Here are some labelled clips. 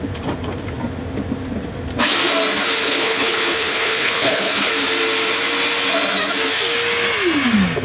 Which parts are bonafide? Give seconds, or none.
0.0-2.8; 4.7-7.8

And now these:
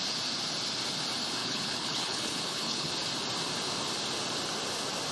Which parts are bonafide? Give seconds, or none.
0.0-1.4; 2.9-5.1

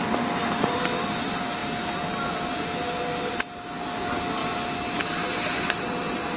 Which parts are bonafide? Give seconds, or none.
1.6-3.3; 4.4-5.7

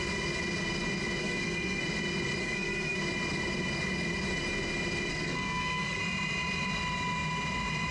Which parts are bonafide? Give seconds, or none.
0.0-1.2; 1.8-2.4; 3.0-5.1; 6.0-7.9

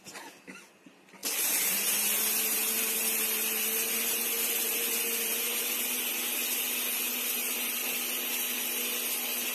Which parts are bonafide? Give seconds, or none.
0.0-9.5